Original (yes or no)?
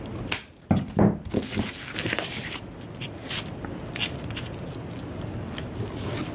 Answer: yes